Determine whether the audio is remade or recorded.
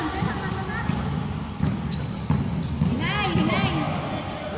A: recorded